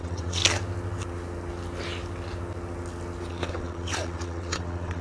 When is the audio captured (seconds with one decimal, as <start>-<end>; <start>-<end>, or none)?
0.4-3.3